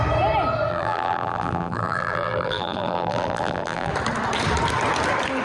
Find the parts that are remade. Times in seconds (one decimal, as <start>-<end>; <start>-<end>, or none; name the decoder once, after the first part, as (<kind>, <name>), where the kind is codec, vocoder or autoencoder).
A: 0.7-3.9 (vocoder, BigVGAN v2)